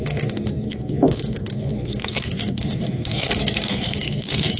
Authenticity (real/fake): fake